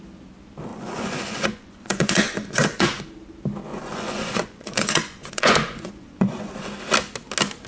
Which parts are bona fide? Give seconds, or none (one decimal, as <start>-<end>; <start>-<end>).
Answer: 0.0-0.7; 3.0-3.7; 6.7-7.7